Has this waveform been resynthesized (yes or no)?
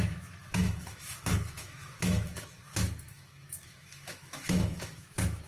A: yes